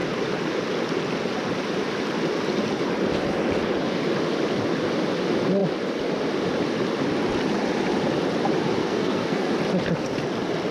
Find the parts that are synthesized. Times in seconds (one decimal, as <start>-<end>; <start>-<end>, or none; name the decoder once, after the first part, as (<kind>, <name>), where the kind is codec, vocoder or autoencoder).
8.8-9.5 (codec, SNAC)